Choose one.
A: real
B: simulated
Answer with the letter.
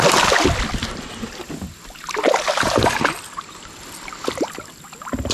A